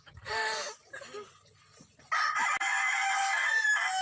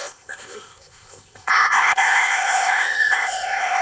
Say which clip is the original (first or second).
first